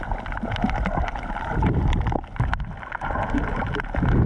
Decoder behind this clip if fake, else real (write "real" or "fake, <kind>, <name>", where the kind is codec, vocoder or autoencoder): real